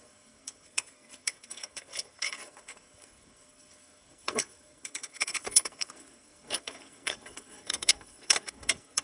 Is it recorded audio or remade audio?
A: remade